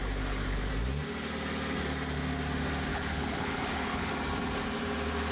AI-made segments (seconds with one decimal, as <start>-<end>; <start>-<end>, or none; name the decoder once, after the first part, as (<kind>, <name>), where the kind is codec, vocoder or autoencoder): 0.0-0.7 (codec, HILCodec); 2.9-4.1